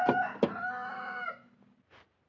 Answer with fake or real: real